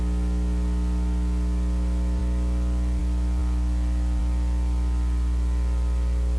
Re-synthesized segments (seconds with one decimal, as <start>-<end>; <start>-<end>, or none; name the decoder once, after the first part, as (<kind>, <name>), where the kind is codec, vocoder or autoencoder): none